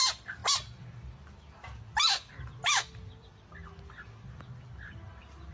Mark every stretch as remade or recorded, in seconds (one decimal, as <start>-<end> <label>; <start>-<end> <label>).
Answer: 0.0-5.5 recorded